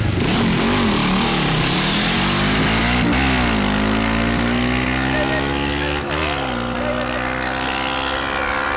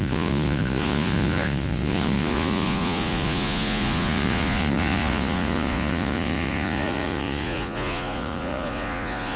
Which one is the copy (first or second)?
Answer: second